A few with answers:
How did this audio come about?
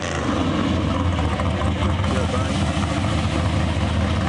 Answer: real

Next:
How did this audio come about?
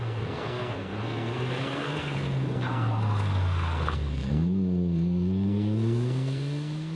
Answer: fake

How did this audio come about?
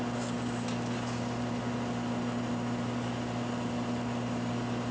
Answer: real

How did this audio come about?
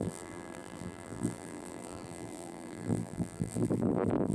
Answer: fake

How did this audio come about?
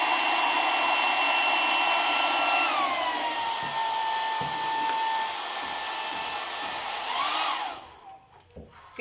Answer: real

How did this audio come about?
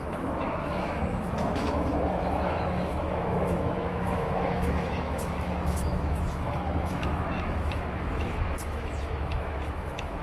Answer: fake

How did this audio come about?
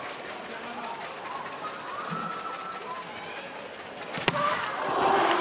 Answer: real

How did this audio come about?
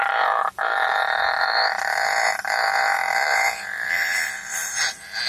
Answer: fake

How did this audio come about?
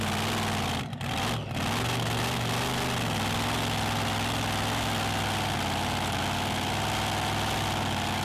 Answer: real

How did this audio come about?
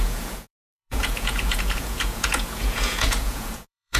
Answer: fake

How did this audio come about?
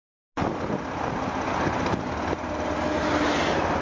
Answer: real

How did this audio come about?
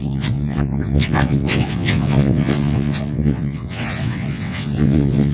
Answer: fake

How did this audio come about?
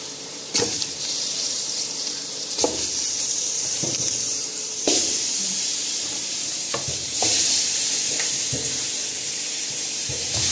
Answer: fake